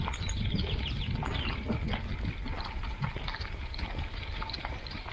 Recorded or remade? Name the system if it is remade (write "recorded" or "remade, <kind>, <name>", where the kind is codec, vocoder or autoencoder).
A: recorded